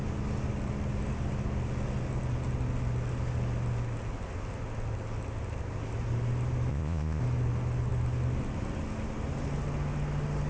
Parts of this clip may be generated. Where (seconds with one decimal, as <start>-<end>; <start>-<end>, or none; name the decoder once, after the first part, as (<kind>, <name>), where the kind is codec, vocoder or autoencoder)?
6.7-7.2 (vocoder, Vocos)